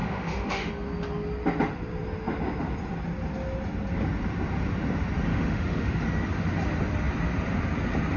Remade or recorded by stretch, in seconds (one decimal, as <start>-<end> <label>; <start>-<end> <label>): 0.0-0.7 remade; 0.7-5.3 recorded; 5.3-6.0 remade; 6.0-8.2 recorded